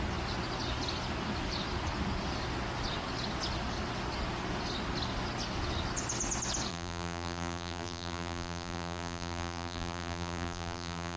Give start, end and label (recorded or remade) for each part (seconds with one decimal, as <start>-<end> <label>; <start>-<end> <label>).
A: 0.0-6.7 recorded; 6.7-11.2 remade